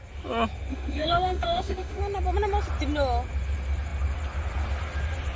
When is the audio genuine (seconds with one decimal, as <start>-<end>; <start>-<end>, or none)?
0.0-0.7; 2.0-5.4